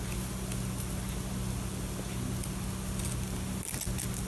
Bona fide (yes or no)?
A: yes